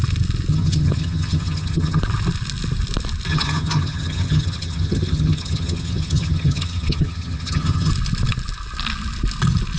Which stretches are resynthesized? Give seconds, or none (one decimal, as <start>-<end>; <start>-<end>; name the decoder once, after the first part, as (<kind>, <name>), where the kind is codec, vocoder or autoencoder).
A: 0.5-2.0 (vocoder, HiFi-GAN); 3.3-7.9